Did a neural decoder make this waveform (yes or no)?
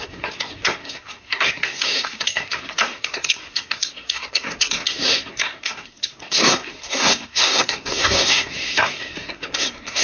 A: yes